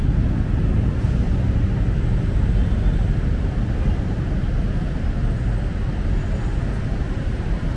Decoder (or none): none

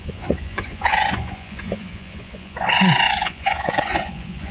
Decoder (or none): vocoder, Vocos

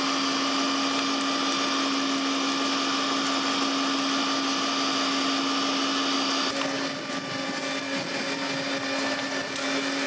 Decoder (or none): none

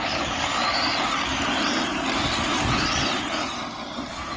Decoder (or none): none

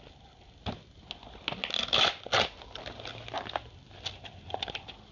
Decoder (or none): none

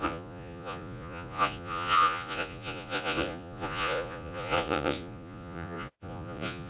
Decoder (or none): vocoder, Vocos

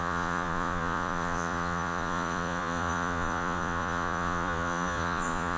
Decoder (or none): vocoder, Vocos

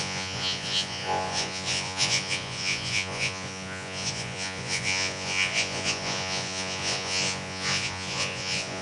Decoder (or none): vocoder, Vocos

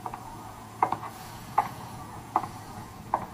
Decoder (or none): vocoder, Vocos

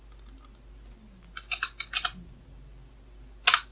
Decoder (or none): none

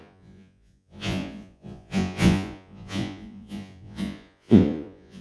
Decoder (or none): vocoder, Vocos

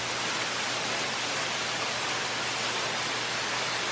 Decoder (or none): none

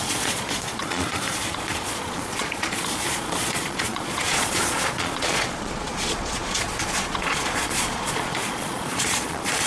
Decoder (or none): vocoder, Vocos